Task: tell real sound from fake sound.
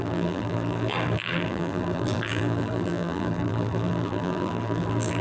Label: fake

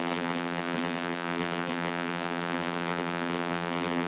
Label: fake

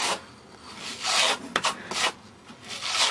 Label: real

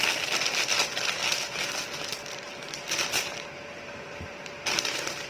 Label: real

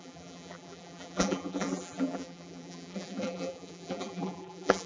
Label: fake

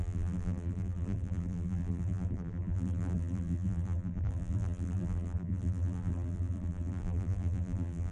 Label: fake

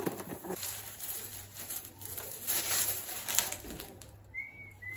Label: fake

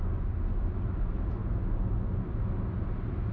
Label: real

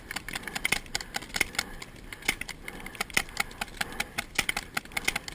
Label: real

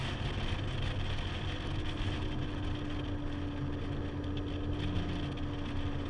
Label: real